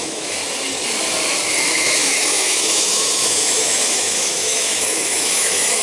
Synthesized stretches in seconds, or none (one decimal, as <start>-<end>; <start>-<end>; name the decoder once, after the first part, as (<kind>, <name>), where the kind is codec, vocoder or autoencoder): 0.0-0.4 (autoencoder, DAC-VAE); 1.6-5.8